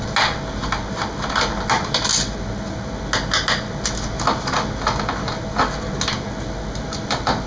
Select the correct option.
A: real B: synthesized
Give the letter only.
A